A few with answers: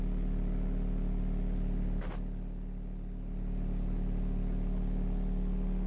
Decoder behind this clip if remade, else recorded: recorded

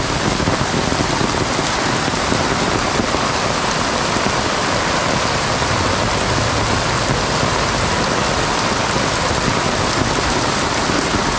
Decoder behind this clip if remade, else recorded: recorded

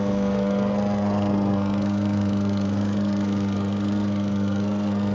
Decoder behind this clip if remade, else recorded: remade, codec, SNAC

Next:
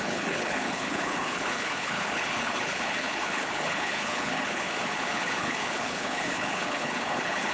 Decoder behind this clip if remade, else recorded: remade, codec, HILCodec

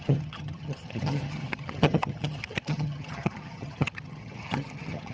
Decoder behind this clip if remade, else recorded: remade, vocoder, HiFi-GAN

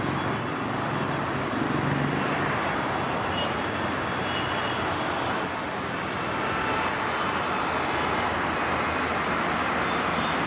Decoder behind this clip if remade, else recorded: recorded